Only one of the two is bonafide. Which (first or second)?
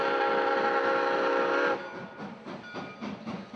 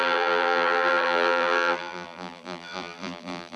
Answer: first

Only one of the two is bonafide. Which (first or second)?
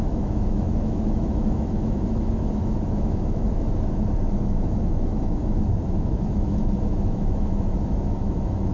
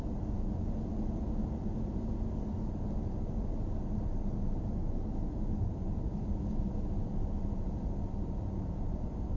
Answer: second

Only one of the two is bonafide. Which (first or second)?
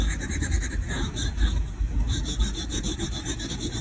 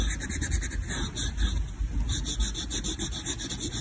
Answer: second